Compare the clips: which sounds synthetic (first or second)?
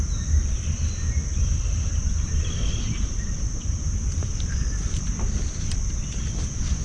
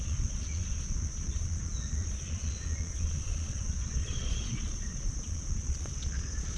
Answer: second